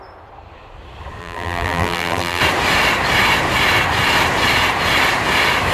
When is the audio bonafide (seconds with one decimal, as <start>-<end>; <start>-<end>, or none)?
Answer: 0.0-1.2; 2.4-5.7